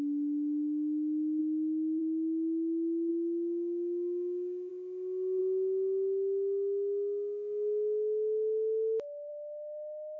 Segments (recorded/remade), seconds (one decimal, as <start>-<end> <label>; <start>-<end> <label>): 0.0-1.4 recorded; 1.4-2.0 remade; 2.0-3.1 recorded; 3.1-4.7 remade; 4.7-10.2 recorded